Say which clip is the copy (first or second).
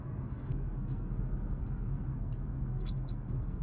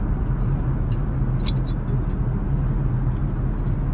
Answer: first